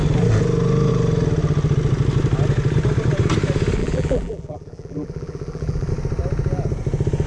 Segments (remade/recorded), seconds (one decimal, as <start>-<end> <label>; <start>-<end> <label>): 0.0-3.8 recorded; 3.8-5.9 remade; 5.9-7.3 recorded